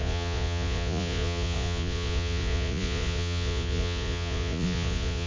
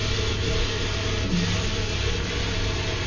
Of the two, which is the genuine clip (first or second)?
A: second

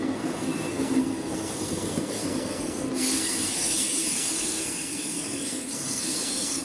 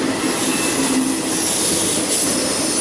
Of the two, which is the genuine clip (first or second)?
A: second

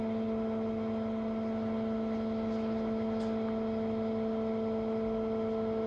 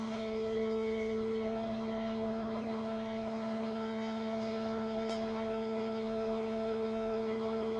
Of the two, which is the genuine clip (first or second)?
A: first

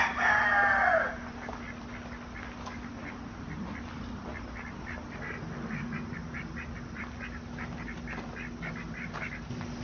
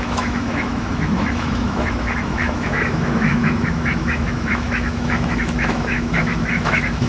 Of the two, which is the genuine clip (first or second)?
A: first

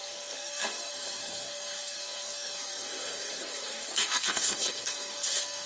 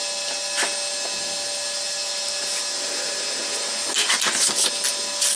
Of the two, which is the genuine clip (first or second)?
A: second